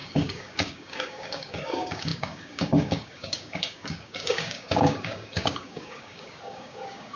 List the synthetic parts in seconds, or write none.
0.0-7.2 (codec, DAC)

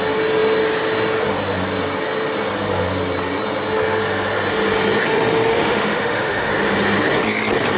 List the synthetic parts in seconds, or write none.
5.5-6.5 (autoencoder, DAC-VAE)

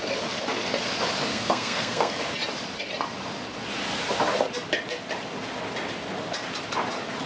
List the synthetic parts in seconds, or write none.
1.3-2.2 (codec, SNAC)

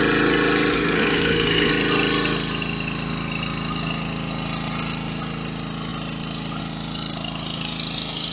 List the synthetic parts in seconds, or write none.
0.7-1.7 (codec, SNAC)

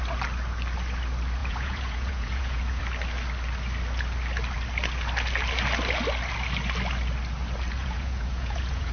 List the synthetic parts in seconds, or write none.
1.4-2.8 (vocoder, Vocos); 7.8-8.9

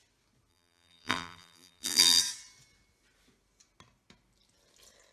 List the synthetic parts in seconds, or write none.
0.5-2.2 (vocoder, BigVGAN v2)

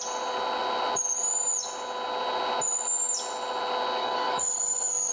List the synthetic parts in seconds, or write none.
4.0-5.1 (codec, DAC)

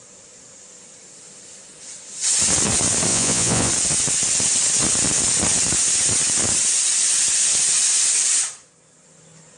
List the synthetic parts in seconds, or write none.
3.1-3.7 (vocoder, Vocos)